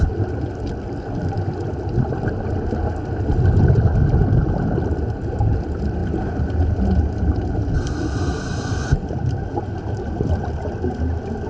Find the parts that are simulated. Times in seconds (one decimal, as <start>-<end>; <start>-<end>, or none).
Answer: none